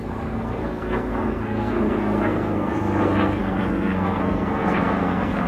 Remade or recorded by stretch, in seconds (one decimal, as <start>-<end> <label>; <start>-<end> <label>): 0.0-5.5 remade